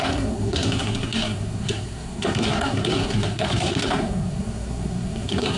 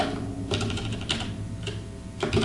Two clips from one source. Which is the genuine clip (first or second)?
second